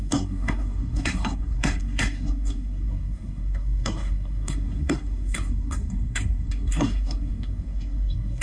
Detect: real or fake fake